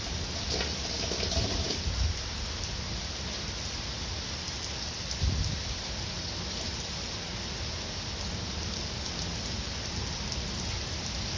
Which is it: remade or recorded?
recorded